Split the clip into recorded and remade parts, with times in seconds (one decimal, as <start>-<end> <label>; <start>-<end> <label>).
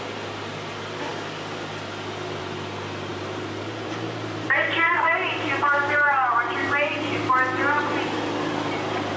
0.0-3.1 recorded; 3.1-6.7 remade; 6.7-9.2 recorded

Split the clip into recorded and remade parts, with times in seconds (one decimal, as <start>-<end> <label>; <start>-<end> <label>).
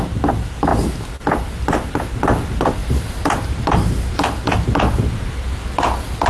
0.0-2.8 recorded; 2.8-4.1 remade; 4.1-6.3 recorded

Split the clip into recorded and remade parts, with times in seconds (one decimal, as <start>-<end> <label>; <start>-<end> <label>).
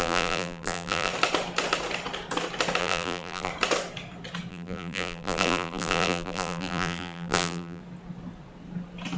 0.0-1.1 remade; 1.1-2.8 recorded; 2.8-3.5 remade; 3.5-4.5 recorded; 4.5-7.8 remade; 7.8-9.2 recorded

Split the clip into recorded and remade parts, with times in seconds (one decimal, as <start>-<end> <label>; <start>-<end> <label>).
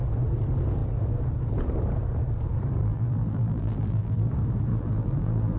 0.0-2.8 recorded; 2.8-4.3 remade; 4.3-4.7 recorded; 4.7-5.6 remade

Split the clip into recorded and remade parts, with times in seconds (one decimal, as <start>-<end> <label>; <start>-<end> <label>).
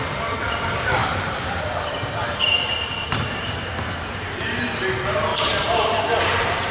0.0-1.0 recorded; 1.0-4.8 remade; 4.8-5.3 recorded; 5.3-6.7 remade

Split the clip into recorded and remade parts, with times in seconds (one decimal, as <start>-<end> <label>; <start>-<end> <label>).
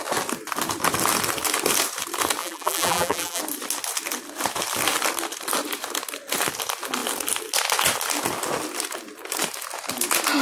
0.0-2.4 recorded; 2.4-3.4 remade; 3.4-10.4 recorded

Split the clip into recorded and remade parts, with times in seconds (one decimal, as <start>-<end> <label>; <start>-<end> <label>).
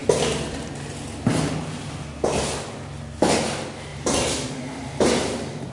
0.0-3.9 recorded; 3.9-5.7 remade